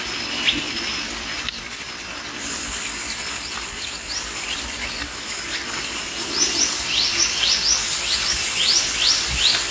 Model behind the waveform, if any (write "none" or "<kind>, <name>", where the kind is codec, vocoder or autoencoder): vocoder, BigVGAN v2